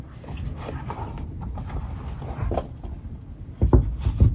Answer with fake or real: real